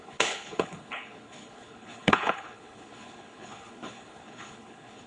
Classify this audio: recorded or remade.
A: remade